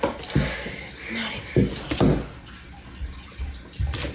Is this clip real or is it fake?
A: real